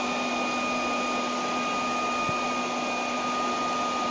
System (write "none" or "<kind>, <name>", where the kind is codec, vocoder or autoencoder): none